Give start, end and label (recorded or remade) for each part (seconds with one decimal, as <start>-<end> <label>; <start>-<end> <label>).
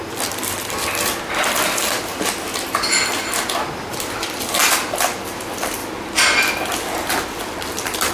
0.0-2.1 remade; 2.1-3.5 recorded; 3.5-8.1 remade